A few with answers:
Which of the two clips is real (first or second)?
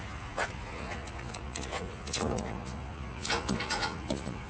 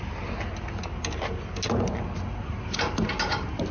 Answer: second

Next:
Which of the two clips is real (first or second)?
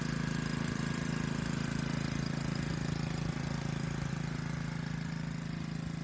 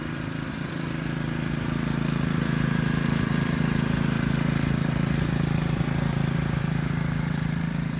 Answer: first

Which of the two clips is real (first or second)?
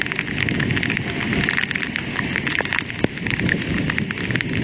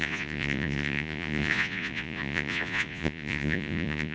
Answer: first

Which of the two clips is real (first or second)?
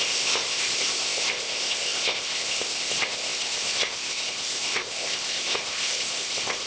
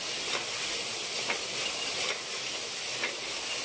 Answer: second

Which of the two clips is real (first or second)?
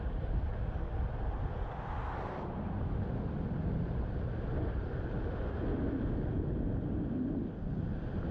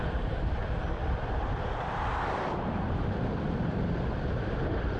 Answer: first